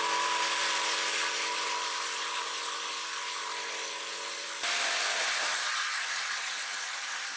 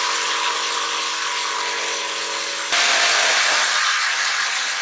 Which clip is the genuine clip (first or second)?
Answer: second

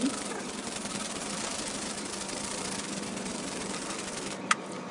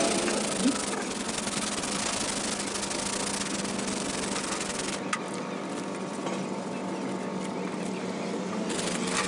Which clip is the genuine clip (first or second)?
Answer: second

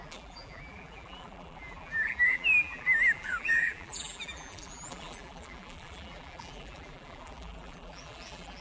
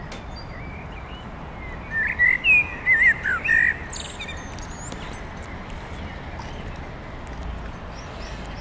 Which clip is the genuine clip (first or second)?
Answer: second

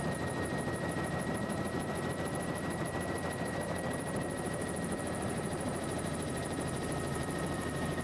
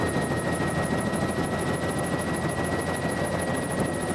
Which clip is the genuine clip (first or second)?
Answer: second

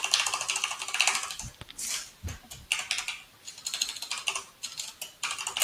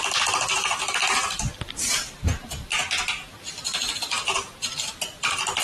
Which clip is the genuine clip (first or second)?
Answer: first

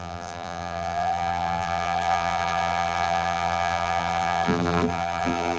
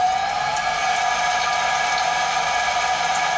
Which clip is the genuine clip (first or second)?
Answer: second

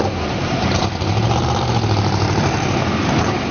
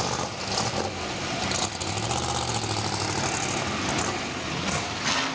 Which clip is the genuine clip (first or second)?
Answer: second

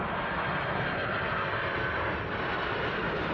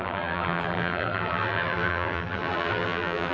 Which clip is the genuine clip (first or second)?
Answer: first